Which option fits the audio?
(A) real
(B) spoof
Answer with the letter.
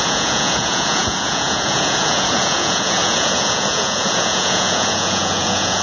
B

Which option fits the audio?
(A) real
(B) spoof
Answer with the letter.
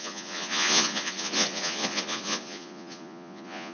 B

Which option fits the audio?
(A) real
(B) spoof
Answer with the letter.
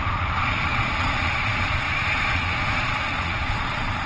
B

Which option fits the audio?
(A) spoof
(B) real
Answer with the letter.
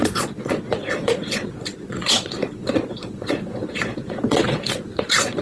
A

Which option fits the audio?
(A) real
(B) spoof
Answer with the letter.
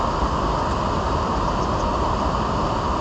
A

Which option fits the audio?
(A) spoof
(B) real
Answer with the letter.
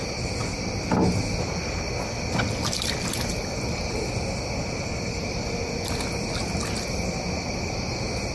B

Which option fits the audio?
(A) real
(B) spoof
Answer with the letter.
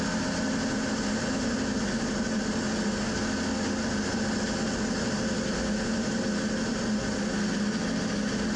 A